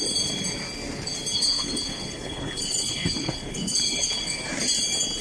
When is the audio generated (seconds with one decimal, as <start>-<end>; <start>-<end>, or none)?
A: 1.3-4.4